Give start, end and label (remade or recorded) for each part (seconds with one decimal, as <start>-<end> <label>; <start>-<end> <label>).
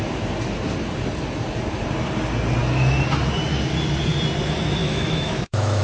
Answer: 0.0-4.8 recorded; 4.8-5.8 remade